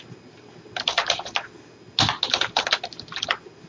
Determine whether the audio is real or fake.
real